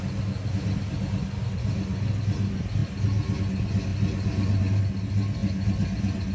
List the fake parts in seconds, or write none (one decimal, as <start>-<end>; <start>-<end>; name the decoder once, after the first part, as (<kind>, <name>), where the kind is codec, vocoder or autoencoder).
none